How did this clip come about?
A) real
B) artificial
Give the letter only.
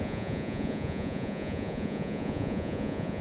B